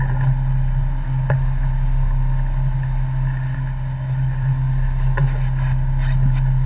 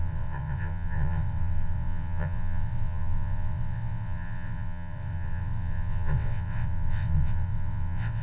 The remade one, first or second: second